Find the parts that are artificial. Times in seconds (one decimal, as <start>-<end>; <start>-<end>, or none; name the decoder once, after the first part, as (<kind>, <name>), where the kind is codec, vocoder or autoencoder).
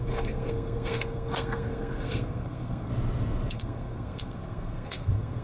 0.0-2.9 (codec, SNAC); 3.5-5.4